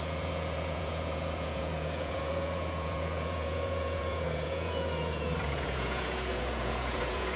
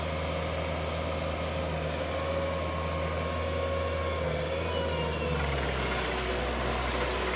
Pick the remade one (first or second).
first